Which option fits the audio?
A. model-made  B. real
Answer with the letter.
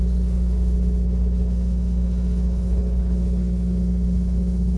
A